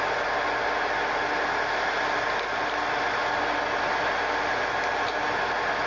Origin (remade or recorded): recorded